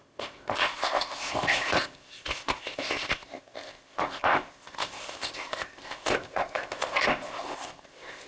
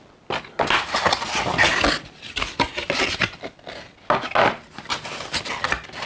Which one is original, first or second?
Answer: second